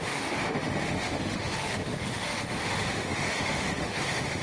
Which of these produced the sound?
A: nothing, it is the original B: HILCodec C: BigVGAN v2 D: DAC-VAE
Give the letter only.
D